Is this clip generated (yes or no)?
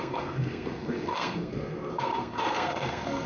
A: yes